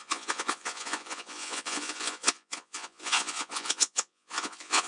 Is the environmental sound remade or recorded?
remade